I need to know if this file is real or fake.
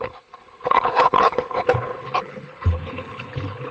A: fake